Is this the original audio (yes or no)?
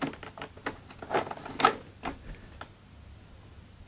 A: yes